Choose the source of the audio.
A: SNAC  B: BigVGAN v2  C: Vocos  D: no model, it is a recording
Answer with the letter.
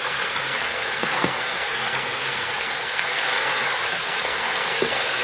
A